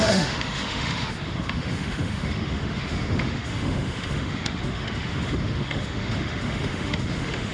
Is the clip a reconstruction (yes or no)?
yes